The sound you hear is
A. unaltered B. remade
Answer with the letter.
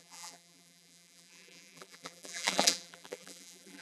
B